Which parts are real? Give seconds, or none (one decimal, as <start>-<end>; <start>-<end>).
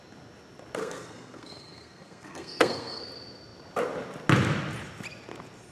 0.0-0.8; 3.0-5.7